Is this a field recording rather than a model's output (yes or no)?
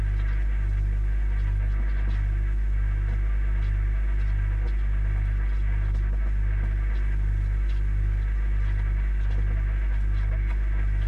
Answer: yes